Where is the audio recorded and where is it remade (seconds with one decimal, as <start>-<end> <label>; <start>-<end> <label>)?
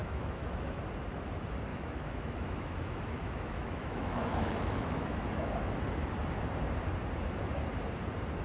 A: 0.0-0.8 remade; 0.8-1.7 recorded; 1.7-5.5 remade; 5.5-8.4 recorded